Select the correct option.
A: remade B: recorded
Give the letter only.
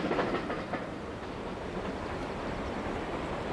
B